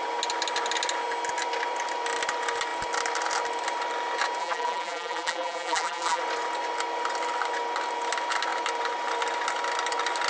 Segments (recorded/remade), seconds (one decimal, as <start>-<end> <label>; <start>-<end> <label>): 0.0-4.4 recorded; 4.4-6.2 remade; 6.2-10.3 recorded